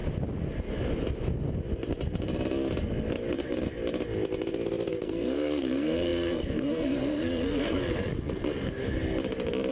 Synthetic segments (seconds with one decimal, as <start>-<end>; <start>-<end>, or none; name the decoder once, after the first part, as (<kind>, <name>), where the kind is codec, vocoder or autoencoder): 4.9-8.8 (codec, SNAC)